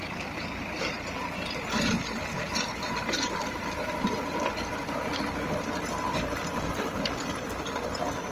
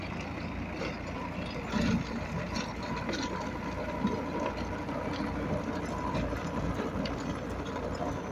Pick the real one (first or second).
second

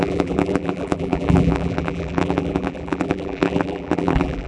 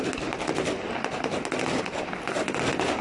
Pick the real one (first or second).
second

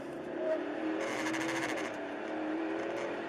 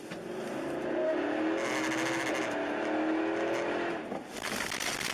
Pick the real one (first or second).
second